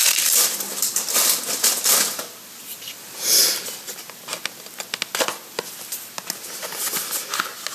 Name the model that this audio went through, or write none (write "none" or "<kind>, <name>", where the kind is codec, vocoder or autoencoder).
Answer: none